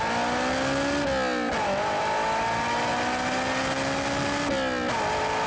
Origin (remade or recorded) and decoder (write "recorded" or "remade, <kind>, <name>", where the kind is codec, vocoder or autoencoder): recorded